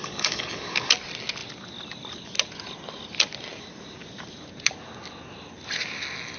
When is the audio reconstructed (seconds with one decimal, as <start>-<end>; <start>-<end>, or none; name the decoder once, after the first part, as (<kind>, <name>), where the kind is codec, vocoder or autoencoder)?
0.0-0.9 (codec, DAC)

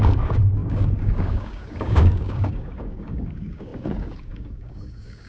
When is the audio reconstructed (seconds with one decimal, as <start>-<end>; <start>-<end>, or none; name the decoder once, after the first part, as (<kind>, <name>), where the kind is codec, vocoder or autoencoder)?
0.0-5.3 (codec, DAC)

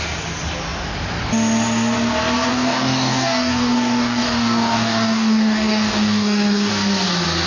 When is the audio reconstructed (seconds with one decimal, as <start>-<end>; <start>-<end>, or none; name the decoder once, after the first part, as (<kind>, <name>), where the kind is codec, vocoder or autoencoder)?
2.5-6.7 (codec, DAC)

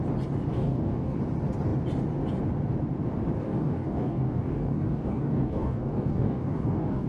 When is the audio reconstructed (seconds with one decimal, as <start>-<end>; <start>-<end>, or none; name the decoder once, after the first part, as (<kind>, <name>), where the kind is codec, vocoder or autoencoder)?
0.5-1.2 (codec, DAC); 3.4-7.1